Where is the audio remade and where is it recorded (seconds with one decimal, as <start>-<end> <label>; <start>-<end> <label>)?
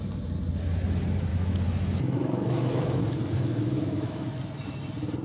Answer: 0.0-1.3 recorded; 1.3-4.3 remade; 4.3-5.2 recorded